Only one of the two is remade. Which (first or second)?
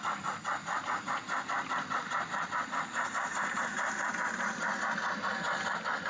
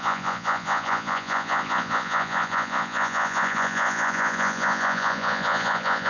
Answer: second